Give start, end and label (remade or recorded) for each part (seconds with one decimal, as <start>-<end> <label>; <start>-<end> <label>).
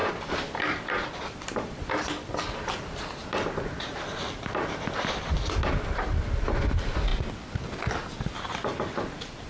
0.0-3.2 remade; 3.2-9.5 recorded